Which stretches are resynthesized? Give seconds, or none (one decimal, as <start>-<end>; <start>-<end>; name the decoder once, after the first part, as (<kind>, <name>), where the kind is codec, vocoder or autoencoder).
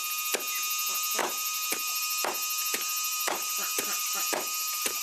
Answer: 1.2-2.0 (vocoder, BigVGAN v2); 3.1-5.0